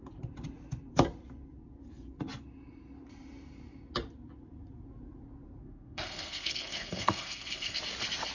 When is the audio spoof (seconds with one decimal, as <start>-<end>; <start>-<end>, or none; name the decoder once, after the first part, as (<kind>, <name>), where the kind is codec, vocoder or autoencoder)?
5.6-7.8 (codec, SNAC)